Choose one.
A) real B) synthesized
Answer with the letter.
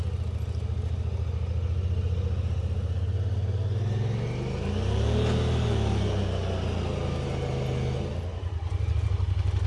A